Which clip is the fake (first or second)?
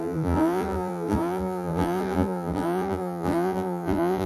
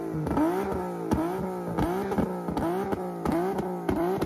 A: first